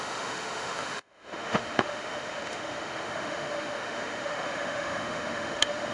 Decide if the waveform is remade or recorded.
remade